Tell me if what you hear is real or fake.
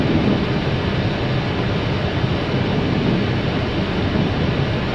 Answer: real